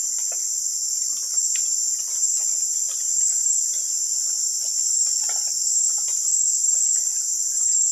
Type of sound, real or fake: real